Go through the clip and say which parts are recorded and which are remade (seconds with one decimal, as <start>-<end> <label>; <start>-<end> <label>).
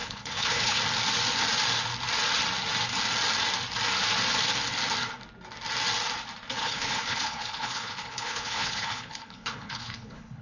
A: 0.0-0.8 remade; 0.8-6.6 recorded; 6.6-10.4 remade